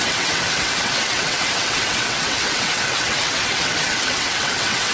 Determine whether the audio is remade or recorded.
remade